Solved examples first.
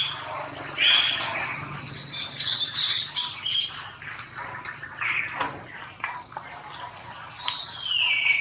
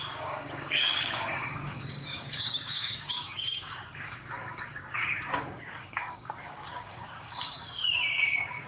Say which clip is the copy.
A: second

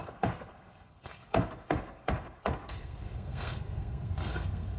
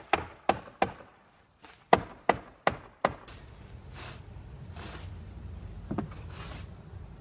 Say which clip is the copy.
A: first